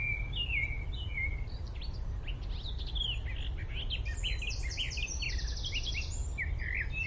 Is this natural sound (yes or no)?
yes